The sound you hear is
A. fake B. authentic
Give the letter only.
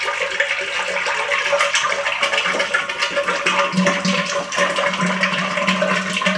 B